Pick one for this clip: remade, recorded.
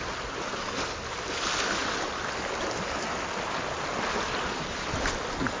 recorded